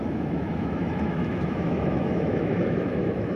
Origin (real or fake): fake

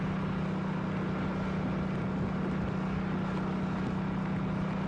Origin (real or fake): real